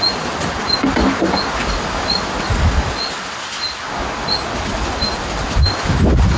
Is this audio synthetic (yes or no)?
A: no